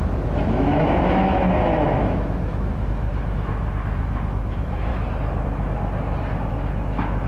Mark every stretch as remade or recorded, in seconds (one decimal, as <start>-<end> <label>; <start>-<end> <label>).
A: 0.0-4.9 remade; 4.9-6.5 recorded; 6.5-7.3 remade